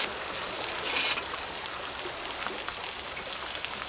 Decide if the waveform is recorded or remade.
recorded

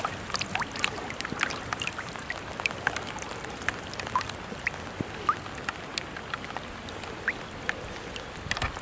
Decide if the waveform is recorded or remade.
recorded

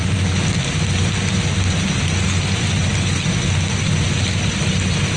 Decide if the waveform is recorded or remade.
recorded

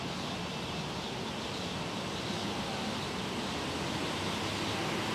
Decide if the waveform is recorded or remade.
recorded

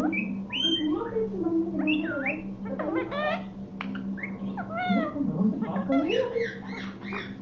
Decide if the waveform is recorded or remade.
recorded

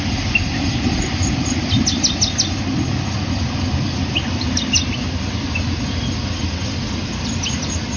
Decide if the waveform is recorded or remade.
recorded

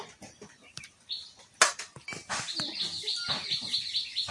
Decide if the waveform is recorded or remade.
recorded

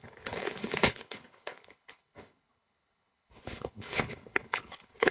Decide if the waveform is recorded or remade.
remade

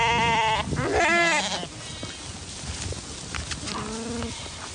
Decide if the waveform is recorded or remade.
recorded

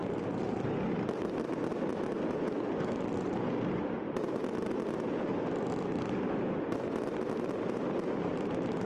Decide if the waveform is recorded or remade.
recorded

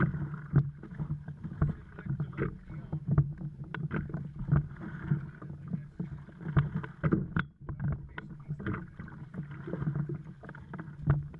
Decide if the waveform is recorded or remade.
recorded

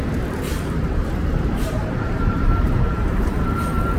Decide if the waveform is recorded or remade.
remade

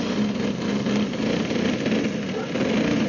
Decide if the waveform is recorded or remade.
recorded